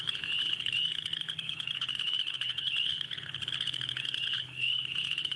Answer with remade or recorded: remade